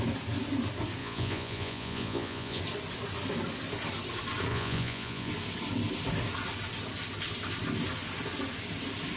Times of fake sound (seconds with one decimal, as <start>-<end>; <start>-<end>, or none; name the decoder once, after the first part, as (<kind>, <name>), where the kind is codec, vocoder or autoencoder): 1.0-2.6 (vocoder, Vocos); 4.5-5.3